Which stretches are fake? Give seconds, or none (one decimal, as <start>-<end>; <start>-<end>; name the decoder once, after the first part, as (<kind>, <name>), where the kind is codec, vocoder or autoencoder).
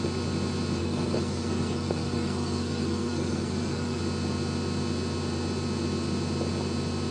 0.8-4.0 (codec, SNAC)